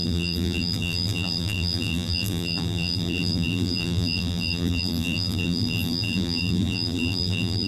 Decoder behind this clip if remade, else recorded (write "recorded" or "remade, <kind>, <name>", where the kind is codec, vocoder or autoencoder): remade, vocoder, BigVGAN v2